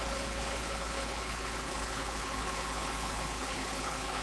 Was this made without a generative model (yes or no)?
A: no